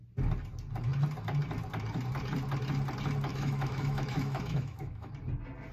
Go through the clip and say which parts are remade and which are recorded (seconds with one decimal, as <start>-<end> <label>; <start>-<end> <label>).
0.0-3.3 recorded; 3.3-5.1 remade; 5.1-5.7 recorded